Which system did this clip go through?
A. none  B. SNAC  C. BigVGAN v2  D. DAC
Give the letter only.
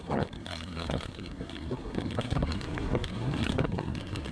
B